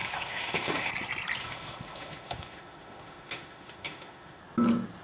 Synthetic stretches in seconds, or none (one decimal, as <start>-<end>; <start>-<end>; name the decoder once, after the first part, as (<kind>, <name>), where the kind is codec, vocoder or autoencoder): 0.0-0.9 (autoencoder, DAC-VAE); 1.4-4.4